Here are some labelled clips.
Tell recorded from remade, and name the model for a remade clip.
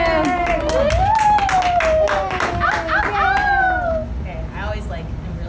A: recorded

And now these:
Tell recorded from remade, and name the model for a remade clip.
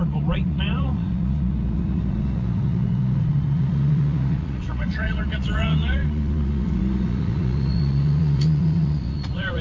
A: remade, vocoder, Vocos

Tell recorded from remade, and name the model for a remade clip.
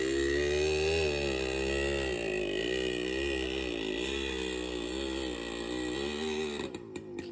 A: recorded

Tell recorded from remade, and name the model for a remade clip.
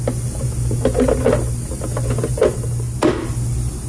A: recorded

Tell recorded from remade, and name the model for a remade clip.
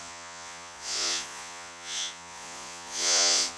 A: remade, vocoder, Vocos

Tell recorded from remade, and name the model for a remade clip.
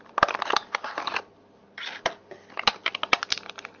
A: recorded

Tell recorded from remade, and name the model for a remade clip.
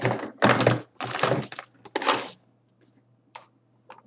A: recorded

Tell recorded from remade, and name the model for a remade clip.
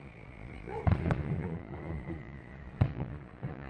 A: remade, vocoder, Vocos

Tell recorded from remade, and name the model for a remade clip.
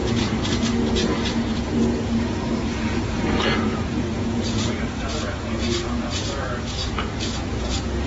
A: remade, vocoder, Vocos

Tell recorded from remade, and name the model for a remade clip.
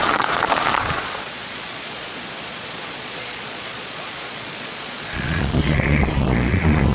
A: remade, vocoder, Vocos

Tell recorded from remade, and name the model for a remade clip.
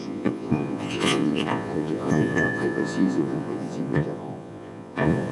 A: remade, vocoder, Vocos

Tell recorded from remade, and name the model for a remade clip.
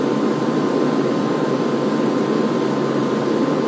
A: recorded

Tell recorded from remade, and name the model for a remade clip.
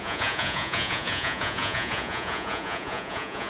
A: remade, vocoder, Vocos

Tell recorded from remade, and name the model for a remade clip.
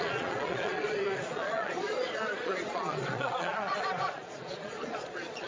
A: remade, vocoder, Vocos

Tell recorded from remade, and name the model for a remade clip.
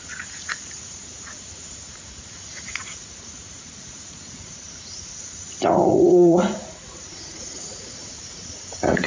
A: remade, vocoder, Vocos